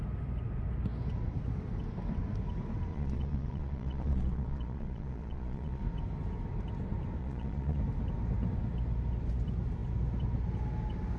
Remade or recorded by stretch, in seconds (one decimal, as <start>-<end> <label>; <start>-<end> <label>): 0.0-2.9 recorded; 2.9-5.8 remade; 5.8-7.2 recorded; 7.2-7.8 remade; 7.8-11.2 recorded